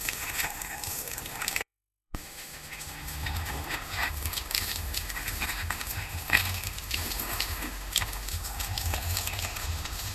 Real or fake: fake